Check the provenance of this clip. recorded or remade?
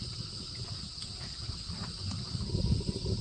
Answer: recorded